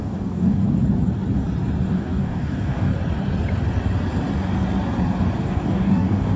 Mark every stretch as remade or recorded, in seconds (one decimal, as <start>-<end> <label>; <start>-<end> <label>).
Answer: 0.0-0.6 remade; 0.6-1.9 recorded; 1.9-2.9 remade; 2.9-5.4 recorded; 5.4-6.4 remade

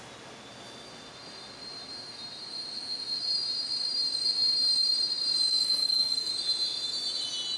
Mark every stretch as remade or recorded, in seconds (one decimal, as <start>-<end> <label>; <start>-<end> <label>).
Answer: 0.0-5.5 recorded; 5.5-6.3 remade; 6.3-7.6 recorded